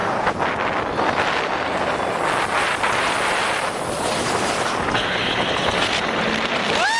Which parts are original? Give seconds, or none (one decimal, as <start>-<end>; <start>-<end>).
0.0-7.0